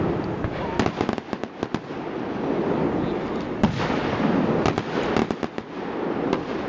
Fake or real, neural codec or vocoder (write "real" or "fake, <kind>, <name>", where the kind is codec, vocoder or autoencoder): real